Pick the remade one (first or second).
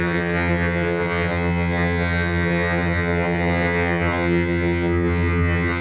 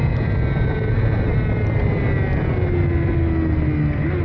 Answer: first